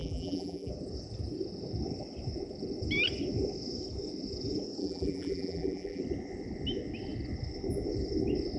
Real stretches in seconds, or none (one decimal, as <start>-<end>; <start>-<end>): 0.7-4.8; 6.0-8.6